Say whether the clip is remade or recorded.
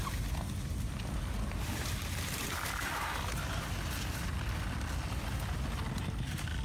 recorded